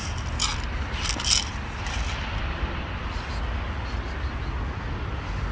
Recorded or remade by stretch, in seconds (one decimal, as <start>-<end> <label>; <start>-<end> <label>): 0.0-5.5 recorded